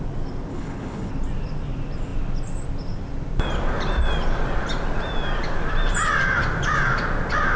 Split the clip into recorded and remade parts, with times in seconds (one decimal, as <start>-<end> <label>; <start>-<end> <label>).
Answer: 0.0-0.5 recorded; 0.5-1.1 remade; 1.1-7.6 recorded